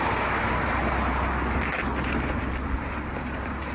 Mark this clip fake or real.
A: real